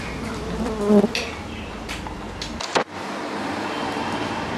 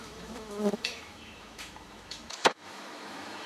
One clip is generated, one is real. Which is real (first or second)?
first